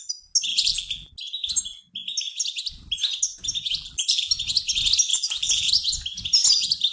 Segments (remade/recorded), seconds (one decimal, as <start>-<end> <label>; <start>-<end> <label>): 0.0-0.5 recorded; 0.5-1.1 remade; 1.1-3.7 recorded; 3.7-4.3 remade; 4.3-5.1 recorded; 5.1-5.7 remade; 5.7-6.9 recorded